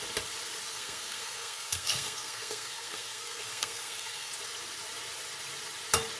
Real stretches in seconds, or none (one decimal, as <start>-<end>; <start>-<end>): 0.0-0.7; 4.3-6.2